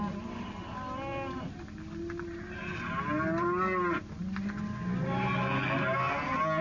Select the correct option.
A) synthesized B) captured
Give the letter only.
B